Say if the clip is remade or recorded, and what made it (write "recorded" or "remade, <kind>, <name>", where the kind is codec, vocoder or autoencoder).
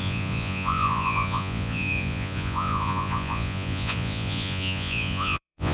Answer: remade, vocoder, Vocos